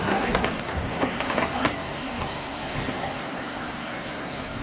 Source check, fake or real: fake